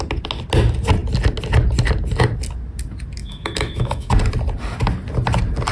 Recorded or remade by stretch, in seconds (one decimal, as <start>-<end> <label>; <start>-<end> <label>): 0.0-3.2 recorded; 3.2-4.1 remade; 4.1-5.7 recorded